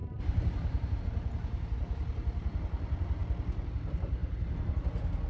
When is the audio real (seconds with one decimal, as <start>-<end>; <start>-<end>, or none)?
1.0-5.3